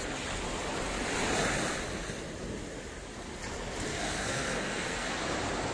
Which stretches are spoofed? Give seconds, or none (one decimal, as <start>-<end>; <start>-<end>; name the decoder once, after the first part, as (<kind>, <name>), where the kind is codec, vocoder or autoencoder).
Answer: 3.9-5.1 (codec, SNAC)